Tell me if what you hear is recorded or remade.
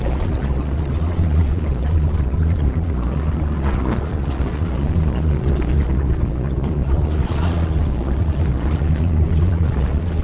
remade